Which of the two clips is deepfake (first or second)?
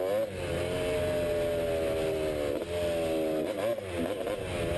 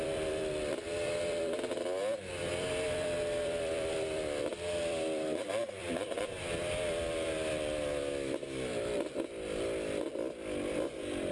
second